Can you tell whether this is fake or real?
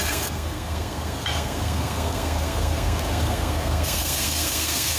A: fake